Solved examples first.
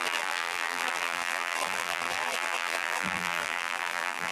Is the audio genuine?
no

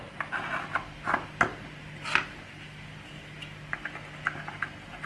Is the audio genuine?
yes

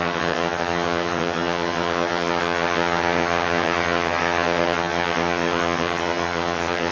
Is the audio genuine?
no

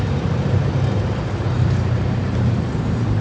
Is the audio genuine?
no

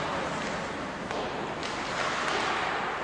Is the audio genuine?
yes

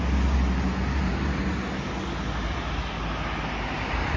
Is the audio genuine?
yes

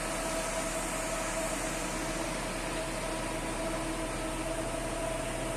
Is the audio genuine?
yes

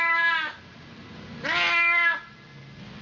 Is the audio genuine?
yes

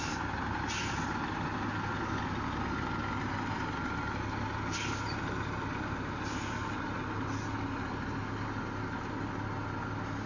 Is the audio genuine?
yes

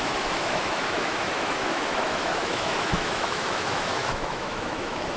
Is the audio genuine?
no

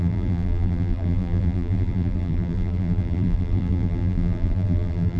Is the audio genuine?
no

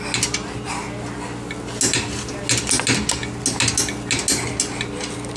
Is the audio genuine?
yes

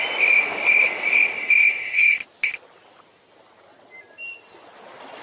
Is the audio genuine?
yes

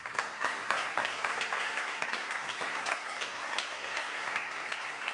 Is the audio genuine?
no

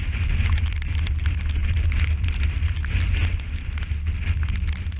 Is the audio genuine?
yes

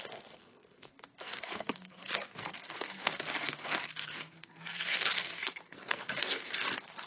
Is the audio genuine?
no